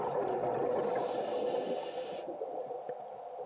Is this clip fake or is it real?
real